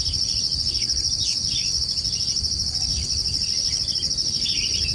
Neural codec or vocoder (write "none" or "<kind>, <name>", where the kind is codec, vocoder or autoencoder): none